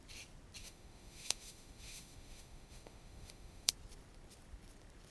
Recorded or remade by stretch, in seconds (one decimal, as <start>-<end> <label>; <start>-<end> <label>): 0.0-0.6 recorded; 0.6-3.7 remade; 3.7-5.1 recorded